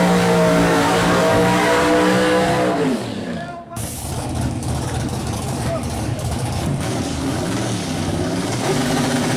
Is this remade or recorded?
remade